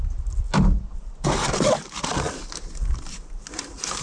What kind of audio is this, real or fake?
real